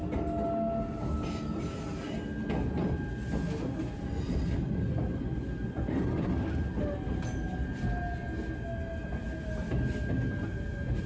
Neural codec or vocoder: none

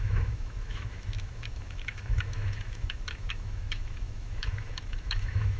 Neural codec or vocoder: autoencoder, DAC-VAE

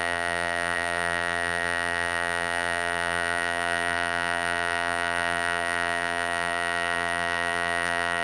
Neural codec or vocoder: vocoder, BigVGAN v2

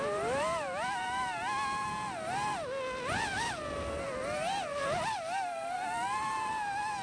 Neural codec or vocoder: none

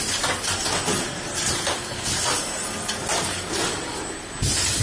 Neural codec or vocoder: none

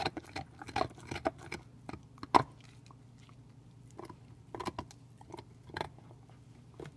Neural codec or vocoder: none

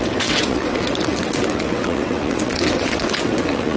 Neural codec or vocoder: vocoder, WaveNeXt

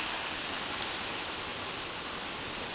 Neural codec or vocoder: none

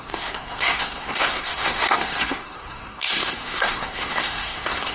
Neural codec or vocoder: codec, SNAC